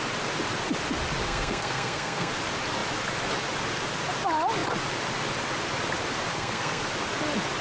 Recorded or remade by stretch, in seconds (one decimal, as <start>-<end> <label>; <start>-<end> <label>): 0.0-1.2 recorded; 1.2-2.3 remade; 2.3-6.3 recorded; 6.3-6.8 remade; 6.8-7.6 recorded